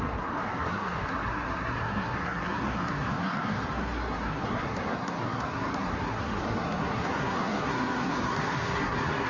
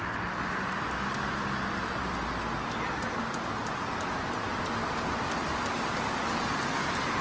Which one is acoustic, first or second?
second